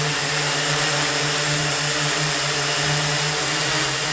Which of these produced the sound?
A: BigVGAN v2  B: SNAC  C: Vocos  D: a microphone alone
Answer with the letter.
D